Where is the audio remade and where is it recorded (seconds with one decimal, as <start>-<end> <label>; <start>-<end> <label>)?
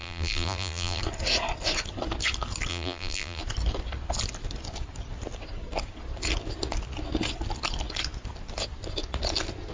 0.0-1.0 remade; 1.0-2.7 recorded; 2.7-3.4 remade; 3.4-9.7 recorded